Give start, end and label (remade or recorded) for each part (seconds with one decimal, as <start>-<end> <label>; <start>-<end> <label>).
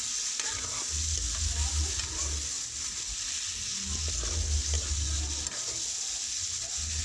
0.0-7.0 recorded